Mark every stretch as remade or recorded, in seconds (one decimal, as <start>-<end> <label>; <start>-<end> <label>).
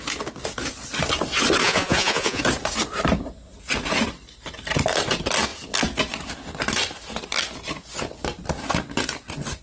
0.0-1.6 recorded; 1.6-2.4 remade; 2.4-9.6 recorded